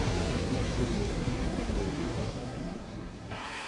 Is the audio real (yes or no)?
no